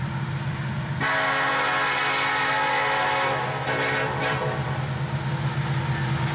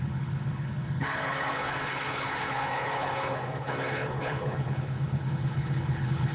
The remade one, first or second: second